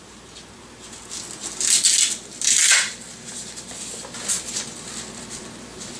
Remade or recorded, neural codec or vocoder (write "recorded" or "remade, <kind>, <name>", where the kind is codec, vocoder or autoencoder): recorded